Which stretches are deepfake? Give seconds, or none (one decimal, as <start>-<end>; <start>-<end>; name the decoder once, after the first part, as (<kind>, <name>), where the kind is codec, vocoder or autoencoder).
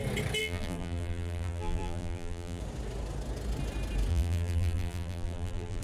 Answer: 0.4-2.6 (vocoder, BigVGAN v2); 4.1-5.8